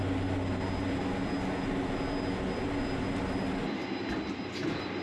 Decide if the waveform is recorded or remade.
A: recorded